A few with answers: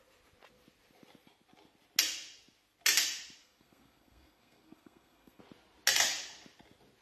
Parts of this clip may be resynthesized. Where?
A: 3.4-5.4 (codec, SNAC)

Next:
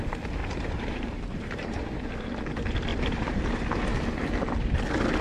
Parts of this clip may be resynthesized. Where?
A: 0.4-2.1 (vocoder, BigVGAN v2); 2.9-3.4

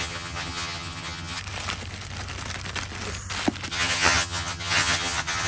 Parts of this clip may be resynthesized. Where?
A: 0.0-1.4 (vocoder, HiFi-GAN); 3.7-5.5

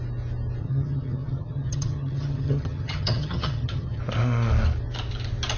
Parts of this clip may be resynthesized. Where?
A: 0.6-4.0 (vocoder, HiFi-GAN)